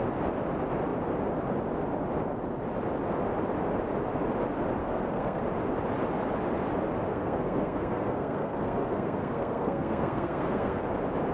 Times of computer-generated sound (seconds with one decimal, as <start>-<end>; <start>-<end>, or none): 4.8-5.4; 7.1-10.8